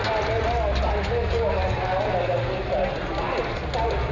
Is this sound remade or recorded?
recorded